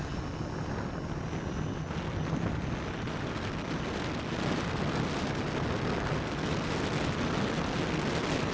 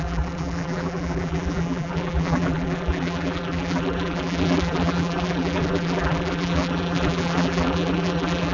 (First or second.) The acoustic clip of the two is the first